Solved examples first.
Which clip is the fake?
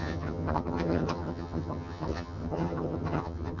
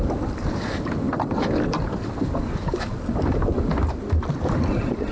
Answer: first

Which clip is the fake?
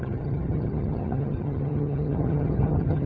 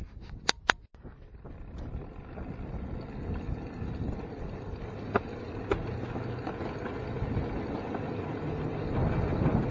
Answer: first